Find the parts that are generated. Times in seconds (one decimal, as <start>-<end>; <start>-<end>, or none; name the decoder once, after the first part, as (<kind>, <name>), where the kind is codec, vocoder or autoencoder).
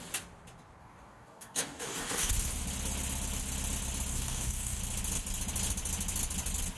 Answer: 0.8-2.3 (codec, DAC); 4.1-4.8